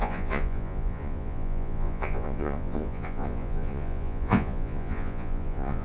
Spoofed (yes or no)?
yes